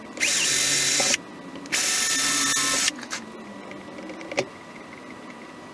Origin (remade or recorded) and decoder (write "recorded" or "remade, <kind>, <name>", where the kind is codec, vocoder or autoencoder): recorded